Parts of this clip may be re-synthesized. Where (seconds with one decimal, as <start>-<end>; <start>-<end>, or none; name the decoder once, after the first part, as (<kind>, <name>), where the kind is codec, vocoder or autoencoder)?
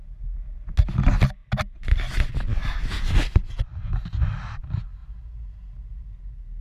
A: none